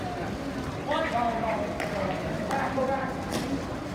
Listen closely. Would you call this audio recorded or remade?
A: recorded